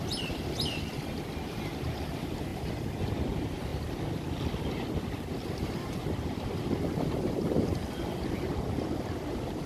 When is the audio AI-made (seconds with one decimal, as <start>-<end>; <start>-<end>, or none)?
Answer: 0.9-1.9